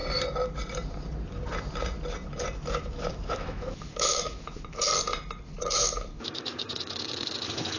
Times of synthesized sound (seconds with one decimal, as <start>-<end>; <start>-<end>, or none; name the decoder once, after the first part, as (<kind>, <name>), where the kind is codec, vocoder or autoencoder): 2.7-4.9 (autoencoder, DAC-VAE); 5.6-7.8